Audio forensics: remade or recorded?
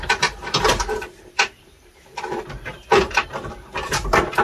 remade